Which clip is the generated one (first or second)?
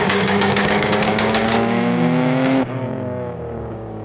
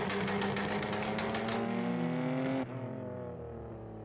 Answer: first